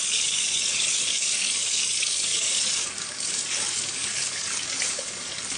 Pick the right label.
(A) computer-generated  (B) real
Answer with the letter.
A